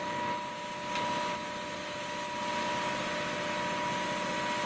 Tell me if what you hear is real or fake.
real